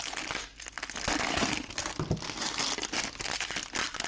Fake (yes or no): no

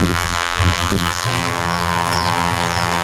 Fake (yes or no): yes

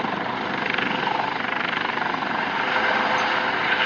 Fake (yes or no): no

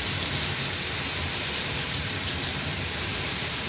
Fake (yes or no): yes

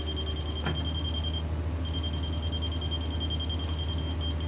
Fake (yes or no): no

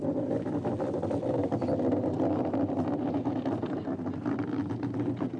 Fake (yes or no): no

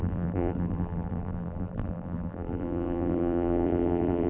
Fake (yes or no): yes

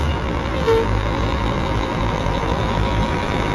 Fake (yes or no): yes